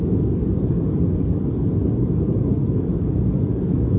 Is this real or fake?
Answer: fake